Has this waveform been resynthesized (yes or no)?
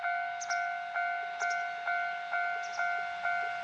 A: no